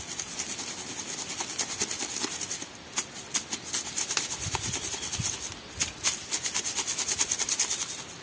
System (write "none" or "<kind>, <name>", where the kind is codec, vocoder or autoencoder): none